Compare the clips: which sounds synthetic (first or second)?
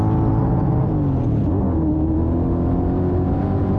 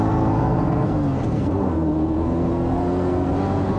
second